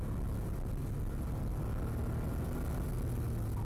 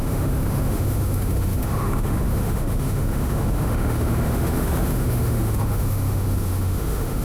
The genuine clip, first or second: first